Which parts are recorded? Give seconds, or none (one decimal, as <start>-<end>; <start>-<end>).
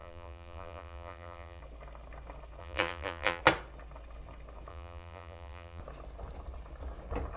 1.6-2.6; 3.4-4.7; 5.8-7.4